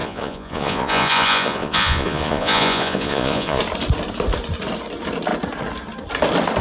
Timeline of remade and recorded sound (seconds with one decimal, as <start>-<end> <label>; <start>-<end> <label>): 0.0-3.6 remade; 3.6-6.6 recorded